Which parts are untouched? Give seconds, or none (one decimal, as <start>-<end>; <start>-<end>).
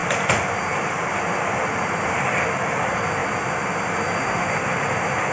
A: 0.6-5.3